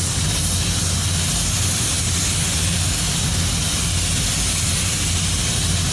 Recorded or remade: recorded